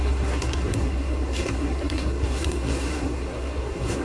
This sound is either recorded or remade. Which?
remade